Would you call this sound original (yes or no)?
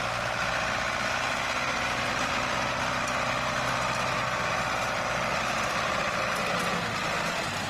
yes